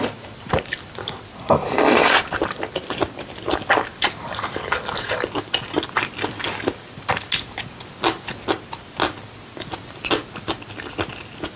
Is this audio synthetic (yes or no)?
no